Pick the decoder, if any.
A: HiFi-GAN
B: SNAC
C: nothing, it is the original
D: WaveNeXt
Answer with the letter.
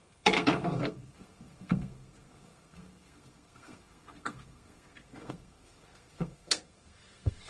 B